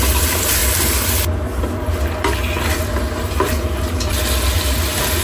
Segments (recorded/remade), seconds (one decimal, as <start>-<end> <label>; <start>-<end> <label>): 0.0-5.2 recorded